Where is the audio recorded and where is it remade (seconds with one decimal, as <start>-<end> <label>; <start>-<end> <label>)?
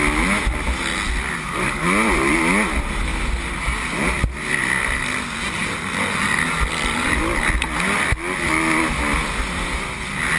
0.0-10.4 recorded